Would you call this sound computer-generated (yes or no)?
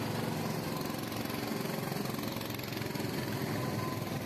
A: no